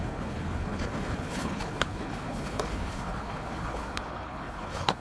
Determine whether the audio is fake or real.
fake